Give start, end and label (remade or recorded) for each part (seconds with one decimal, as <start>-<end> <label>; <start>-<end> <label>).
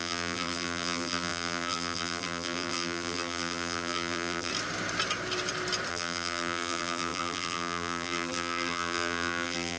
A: 0.0-4.5 remade; 4.5-5.9 recorded; 5.9-9.8 remade